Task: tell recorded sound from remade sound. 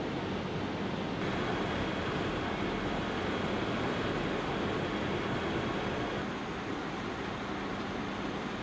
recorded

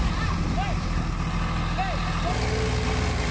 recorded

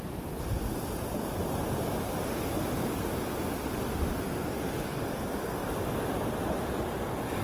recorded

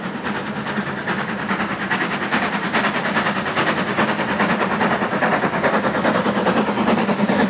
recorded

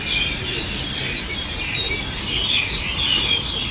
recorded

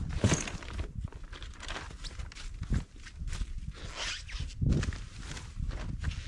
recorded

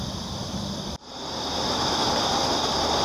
recorded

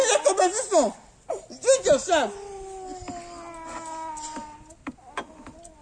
recorded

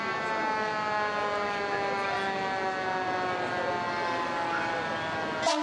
recorded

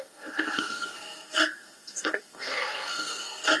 remade